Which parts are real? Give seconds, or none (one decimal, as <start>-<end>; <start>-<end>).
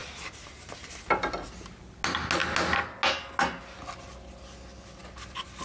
0.0-5.6